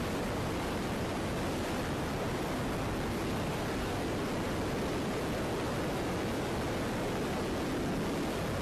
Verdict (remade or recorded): recorded